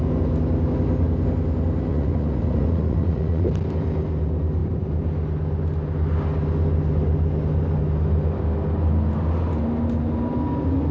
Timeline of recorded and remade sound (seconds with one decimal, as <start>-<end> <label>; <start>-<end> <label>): 0.0-1.9 recorded; 1.9-3.5 remade; 3.5-10.9 recorded